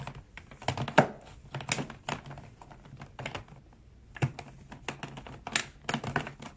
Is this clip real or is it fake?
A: real